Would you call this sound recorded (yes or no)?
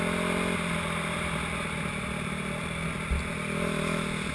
yes